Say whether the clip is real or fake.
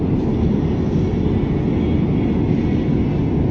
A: real